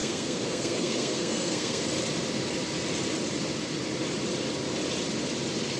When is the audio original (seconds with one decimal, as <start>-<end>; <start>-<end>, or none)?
1.8-5.8